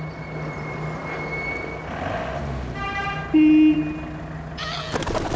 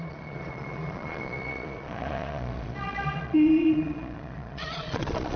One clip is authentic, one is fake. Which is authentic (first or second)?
first